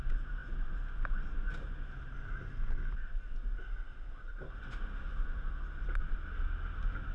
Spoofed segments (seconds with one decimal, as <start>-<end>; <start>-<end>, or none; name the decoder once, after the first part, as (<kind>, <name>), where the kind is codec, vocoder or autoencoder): none